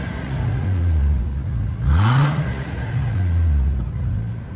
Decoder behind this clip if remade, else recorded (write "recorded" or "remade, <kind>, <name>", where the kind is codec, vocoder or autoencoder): remade, vocoder, Vocos